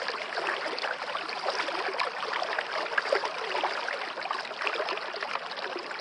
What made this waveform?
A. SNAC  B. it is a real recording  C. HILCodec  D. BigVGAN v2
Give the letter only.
B